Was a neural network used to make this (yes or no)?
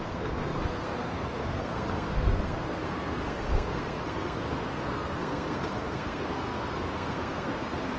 yes